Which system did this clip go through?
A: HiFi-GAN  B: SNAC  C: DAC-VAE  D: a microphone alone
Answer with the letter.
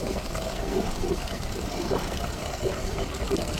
B